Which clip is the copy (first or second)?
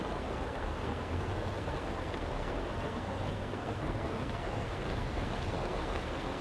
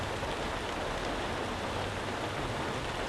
first